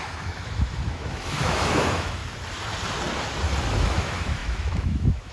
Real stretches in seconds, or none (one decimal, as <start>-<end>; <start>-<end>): 2.2-3.8